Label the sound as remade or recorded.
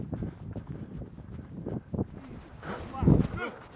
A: recorded